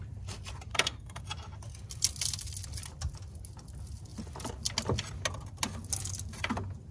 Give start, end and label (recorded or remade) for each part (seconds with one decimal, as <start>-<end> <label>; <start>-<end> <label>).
0.0-0.7 recorded; 0.7-1.2 remade; 1.2-6.9 recorded